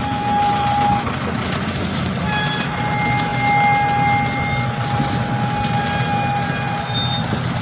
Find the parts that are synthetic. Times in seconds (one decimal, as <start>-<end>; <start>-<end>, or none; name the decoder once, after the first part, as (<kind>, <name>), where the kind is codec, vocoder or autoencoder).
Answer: none

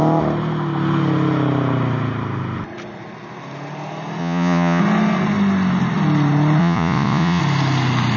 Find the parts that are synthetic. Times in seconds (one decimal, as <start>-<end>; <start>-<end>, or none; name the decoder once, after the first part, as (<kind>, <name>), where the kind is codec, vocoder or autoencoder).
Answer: 4.2-4.8 (vocoder, Vocos); 6.6-7.4

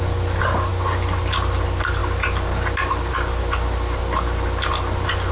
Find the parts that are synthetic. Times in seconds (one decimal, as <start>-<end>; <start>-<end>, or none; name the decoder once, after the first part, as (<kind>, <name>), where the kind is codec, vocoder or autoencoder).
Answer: none

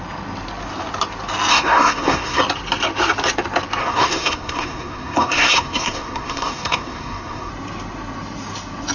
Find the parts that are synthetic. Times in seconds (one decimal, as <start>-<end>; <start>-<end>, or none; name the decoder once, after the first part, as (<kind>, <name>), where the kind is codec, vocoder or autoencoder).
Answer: 1.5-2.4 (codec, SNAC); 3.8-7.5

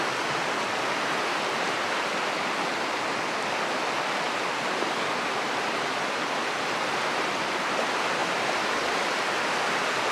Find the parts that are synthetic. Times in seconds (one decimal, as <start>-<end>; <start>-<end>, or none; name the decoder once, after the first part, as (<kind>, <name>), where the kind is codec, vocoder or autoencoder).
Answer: none

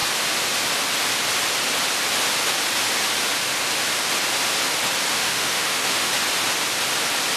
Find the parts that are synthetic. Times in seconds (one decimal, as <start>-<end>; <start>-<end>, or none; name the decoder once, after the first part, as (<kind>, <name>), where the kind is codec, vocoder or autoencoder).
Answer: 5.1-6.1 (autoencoder, DAC-VAE)

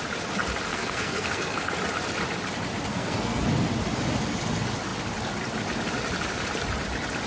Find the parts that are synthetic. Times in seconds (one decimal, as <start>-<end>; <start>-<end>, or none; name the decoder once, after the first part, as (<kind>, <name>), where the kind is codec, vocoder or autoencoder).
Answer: 0.7-1.7 (codec, SNAC); 2.9-3.4